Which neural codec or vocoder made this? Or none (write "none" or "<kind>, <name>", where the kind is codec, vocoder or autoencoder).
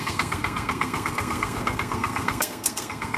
codec, SNAC